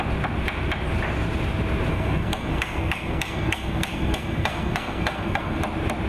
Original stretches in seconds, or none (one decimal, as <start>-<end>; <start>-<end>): 0.0-1.9; 5.6-6.1